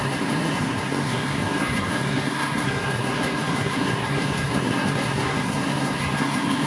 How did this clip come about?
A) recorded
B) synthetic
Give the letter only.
B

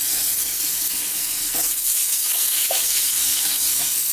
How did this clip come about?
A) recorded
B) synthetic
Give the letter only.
B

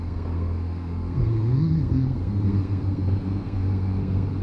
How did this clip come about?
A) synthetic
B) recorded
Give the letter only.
A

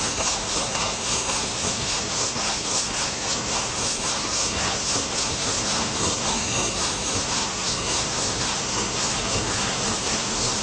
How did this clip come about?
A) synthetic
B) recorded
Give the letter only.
A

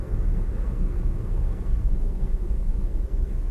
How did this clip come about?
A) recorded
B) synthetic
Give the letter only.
B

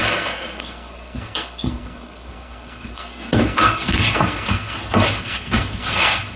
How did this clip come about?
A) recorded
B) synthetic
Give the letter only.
B